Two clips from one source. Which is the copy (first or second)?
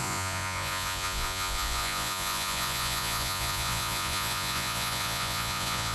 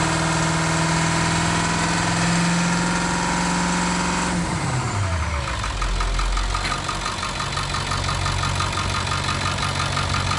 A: first